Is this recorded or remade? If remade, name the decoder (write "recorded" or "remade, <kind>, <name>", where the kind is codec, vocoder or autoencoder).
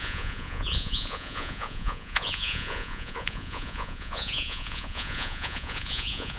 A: remade, vocoder, Vocos